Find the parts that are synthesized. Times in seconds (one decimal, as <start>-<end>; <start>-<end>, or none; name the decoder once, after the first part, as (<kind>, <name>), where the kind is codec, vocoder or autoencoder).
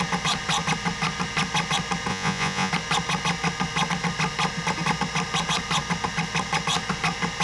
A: 2.1-2.7 (vocoder, Vocos)